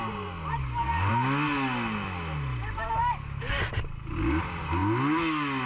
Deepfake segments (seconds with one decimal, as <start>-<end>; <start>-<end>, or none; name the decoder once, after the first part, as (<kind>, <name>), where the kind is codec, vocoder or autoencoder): 0.6-1.1 (codec, DAC); 3.0-3.6